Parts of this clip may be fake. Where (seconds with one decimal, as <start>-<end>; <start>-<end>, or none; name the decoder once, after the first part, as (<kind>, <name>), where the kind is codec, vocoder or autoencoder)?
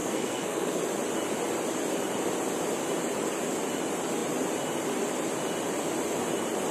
0.0-0.8 (codec, SNAC)